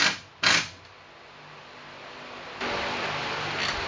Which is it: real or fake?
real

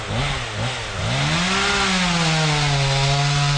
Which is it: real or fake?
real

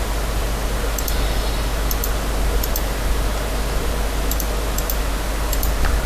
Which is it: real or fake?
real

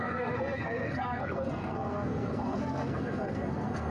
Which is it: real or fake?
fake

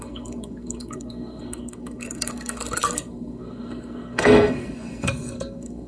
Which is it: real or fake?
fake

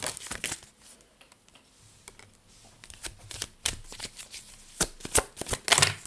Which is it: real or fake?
real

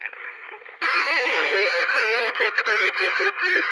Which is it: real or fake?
fake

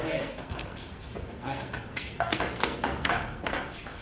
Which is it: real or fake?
fake